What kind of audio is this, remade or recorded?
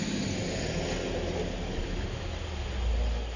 recorded